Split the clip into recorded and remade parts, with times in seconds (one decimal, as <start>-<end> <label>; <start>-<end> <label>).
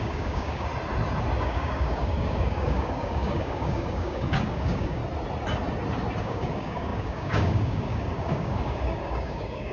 0.0-0.7 remade; 0.7-1.4 recorded; 1.4-5.0 remade; 5.0-6.2 recorded; 6.2-9.7 remade